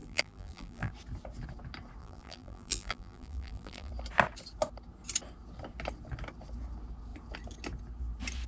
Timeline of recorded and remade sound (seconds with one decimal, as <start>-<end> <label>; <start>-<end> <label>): 0.0-0.9 remade; 0.9-2.0 recorded; 2.0-3.9 remade; 3.9-8.5 recorded